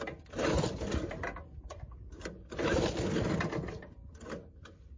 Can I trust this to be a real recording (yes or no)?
yes